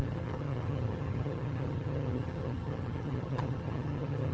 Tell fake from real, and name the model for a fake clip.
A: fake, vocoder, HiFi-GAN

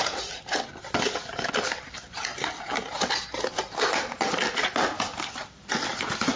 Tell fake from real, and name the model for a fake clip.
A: real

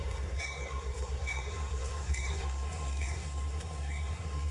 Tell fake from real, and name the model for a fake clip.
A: fake, codec, SNAC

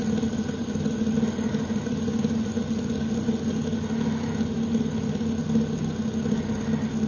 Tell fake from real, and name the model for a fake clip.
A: real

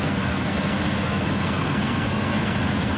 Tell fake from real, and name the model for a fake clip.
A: fake, codec, SNAC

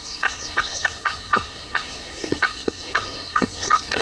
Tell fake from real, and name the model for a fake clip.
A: fake, codec, SNAC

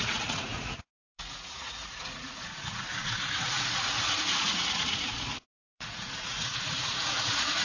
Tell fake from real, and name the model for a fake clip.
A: fake, vocoder, Vocos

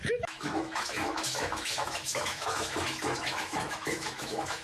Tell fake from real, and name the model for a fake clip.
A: fake, autoencoder, DAC-VAE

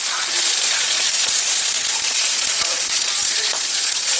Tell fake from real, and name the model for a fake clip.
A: fake, vocoder, Vocos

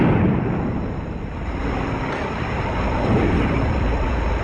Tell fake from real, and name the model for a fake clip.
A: fake, vocoder, BigVGAN v2